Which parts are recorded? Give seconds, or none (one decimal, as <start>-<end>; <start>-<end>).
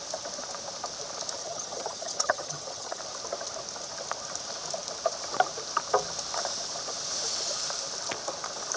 0.0-1.4; 3.0-8.8